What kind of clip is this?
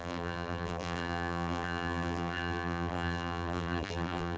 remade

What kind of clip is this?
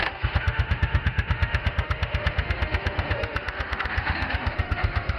remade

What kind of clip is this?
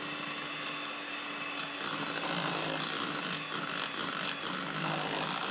recorded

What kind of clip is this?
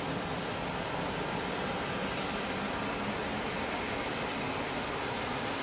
recorded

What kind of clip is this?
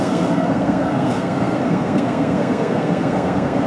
remade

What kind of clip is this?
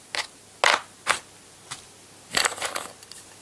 recorded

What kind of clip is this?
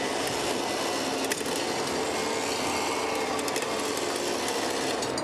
recorded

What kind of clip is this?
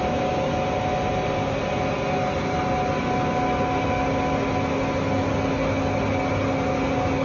recorded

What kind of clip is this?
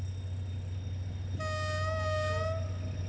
recorded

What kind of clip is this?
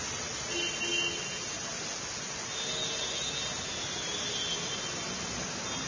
recorded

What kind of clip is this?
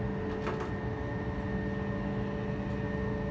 recorded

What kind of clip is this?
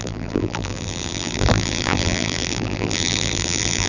remade